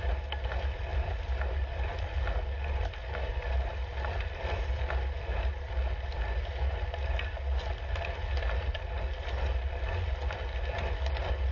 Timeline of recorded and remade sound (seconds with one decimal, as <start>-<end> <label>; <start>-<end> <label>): 0.0-0.9 recorded; 0.9-1.9 remade; 1.9-11.5 recorded